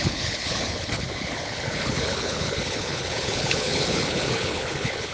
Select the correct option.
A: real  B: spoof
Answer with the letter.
B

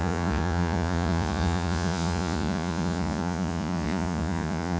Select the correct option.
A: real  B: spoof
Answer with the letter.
B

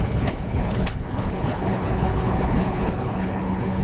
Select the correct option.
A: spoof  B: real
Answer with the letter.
A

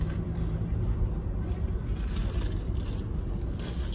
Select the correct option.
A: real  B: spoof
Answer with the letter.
A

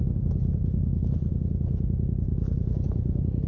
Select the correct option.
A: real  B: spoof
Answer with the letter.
A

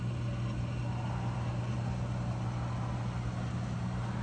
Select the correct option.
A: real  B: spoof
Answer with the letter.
A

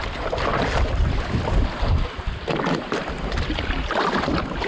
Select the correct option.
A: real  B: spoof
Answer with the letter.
A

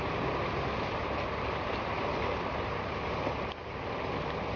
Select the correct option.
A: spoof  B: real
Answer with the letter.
B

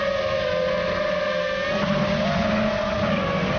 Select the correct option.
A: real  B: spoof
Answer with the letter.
A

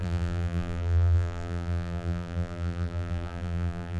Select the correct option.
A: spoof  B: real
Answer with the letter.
A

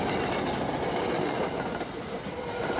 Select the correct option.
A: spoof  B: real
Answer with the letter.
B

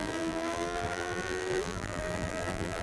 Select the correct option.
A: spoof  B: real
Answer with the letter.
A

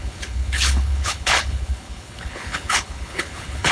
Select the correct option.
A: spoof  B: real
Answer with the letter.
A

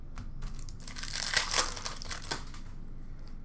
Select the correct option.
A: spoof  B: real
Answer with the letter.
B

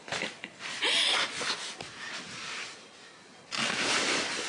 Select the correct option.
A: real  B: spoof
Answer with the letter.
A